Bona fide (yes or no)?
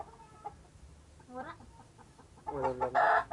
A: yes